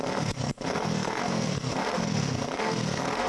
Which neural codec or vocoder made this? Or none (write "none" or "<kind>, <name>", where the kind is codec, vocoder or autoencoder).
codec, SNAC